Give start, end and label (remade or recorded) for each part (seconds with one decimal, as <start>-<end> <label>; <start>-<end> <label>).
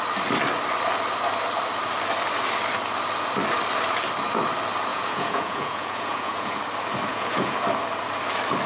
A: 0.0-4.9 recorded; 4.9-6.6 remade; 6.6-7.1 recorded; 7.1-7.6 remade; 7.6-8.7 recorded